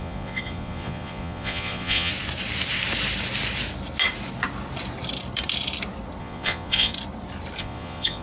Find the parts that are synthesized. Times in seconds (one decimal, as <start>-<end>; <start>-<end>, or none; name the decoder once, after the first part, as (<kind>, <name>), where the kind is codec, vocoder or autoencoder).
0.0-2.1 (vocoder, Vocos); 6.2-6.9; 7.6-8.2